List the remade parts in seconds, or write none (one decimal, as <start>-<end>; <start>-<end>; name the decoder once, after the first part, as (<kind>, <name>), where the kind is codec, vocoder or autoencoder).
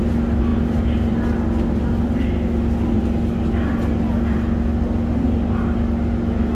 none